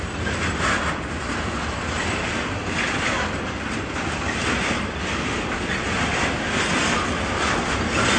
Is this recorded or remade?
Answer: recorded